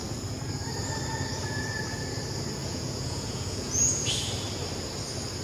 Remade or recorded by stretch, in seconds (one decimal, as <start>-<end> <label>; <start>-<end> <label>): 0.0-2.6 recorded; 2.6-4.1 remade; 4.1-5.4 recorded